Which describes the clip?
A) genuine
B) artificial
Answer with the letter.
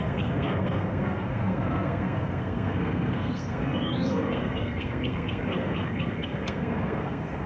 B